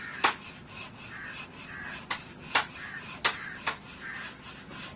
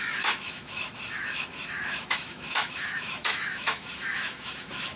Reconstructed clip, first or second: second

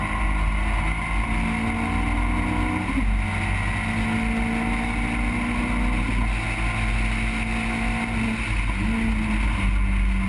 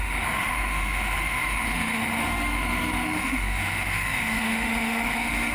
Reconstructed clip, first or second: second